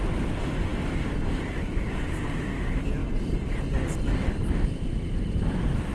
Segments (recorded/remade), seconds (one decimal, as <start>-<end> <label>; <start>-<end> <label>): 0.0-5.9 recorded